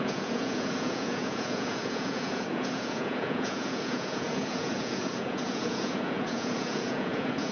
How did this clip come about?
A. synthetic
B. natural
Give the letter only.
A